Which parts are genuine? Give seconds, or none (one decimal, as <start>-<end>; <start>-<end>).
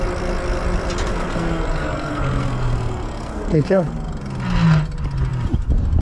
0.0-1.1; 3.9-6.0